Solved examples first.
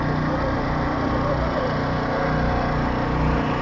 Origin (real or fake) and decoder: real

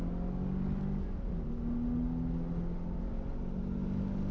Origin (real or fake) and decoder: real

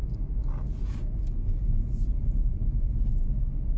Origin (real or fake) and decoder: real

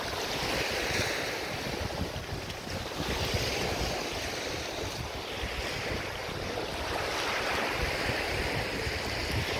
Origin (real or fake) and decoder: real